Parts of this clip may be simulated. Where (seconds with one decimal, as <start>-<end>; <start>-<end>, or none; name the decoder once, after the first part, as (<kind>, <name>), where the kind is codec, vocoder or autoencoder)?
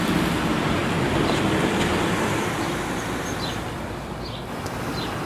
0.0-0.8 (vocoder, BigVGAN v2); 1.5-1.9